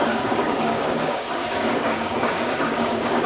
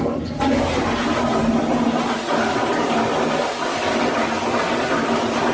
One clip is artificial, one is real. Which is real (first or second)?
second